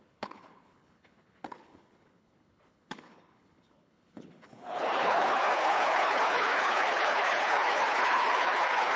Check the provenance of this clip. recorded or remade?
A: remade